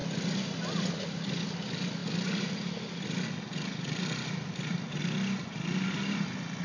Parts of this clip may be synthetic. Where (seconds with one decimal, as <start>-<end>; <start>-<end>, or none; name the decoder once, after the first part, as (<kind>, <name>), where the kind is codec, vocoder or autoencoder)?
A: none